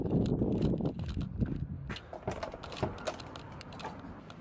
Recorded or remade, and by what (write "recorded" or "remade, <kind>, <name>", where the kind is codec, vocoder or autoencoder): recorded